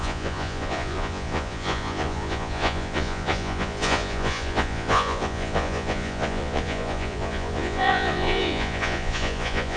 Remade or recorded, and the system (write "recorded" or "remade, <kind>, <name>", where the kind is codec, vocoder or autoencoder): remade, vocoder, Vocos